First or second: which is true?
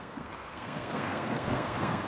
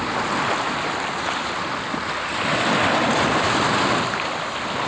second